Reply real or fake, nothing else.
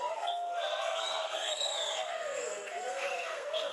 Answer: fake